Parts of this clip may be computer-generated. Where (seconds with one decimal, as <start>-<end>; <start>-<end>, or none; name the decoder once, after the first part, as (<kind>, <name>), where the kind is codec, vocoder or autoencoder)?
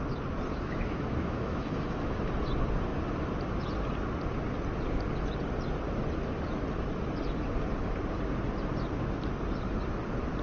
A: 0.5-2.3 (autoencoder, DAC-VAE)